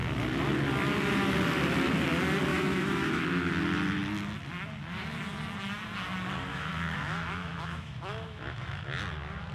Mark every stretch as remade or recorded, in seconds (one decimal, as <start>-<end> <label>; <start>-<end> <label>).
0.0-2.5 recorded; 2.5-3.5 remade; 3.5-6.5 recorded; 6.5-9.0 remade; 9.0-9.5 recorded